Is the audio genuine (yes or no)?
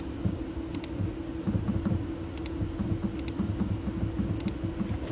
yes